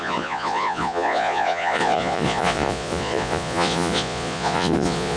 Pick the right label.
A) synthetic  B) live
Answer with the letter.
A